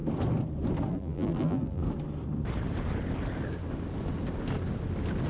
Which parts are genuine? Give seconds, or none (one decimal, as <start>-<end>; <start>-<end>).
0.0-0.9; 1.8-5.3